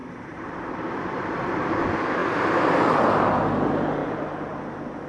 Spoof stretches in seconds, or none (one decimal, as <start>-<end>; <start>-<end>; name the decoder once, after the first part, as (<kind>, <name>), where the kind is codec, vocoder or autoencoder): 0.0-1.7 (vocoder, BigVGAN v2); 4.0-4.6